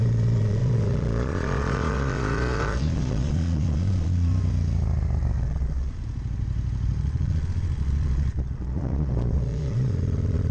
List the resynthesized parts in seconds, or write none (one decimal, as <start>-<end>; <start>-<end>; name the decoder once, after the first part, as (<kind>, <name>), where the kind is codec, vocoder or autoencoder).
0.0-4.3 (vocoder, Vocos); 5.4-6.0; 7.0-10.5

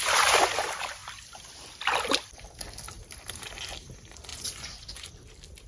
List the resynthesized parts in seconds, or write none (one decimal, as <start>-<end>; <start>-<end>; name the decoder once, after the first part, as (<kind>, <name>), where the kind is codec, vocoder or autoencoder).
4.3-5.1 (vocoder, Vocos)

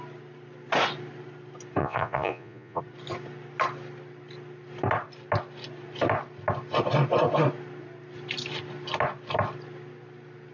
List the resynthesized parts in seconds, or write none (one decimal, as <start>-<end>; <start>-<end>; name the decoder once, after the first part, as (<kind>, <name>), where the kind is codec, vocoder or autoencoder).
1.8-2.8 (vocoder, Vocos)

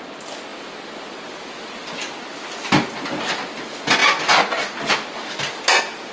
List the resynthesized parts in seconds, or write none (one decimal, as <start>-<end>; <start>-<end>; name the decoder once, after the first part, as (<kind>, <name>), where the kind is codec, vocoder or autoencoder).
none

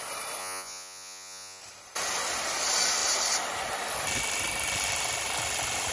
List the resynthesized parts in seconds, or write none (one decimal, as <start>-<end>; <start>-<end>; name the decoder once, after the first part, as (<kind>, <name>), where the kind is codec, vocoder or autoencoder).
0.4-1.6 (vocoder, Vocos)

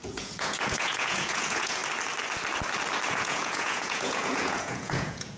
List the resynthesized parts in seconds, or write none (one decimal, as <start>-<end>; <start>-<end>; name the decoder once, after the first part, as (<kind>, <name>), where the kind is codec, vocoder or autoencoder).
0.0-1.8 (vocoder, Vocos); 3.1-5.4